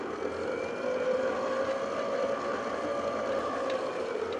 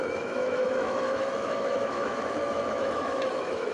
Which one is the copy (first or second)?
second